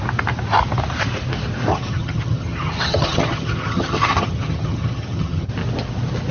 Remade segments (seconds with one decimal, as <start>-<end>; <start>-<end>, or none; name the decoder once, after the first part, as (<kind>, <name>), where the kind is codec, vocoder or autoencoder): 1.7-5.5 (vocoder, HiFi-GAN)